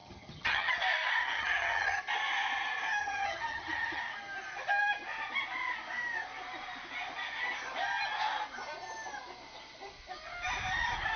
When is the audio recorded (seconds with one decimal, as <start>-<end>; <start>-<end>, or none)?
0.7-1.2; 2.0-3.0; 4.0-11.2